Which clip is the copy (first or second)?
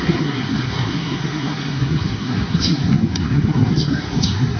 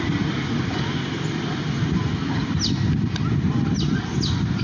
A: first